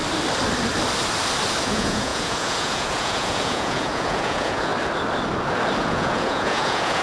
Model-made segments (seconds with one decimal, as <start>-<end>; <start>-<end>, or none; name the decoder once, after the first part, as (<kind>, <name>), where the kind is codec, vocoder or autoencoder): 1.6-4.7 (vocoder, Vocos); 5.8-7.0